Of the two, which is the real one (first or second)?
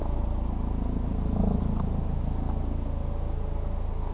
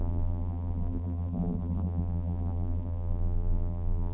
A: first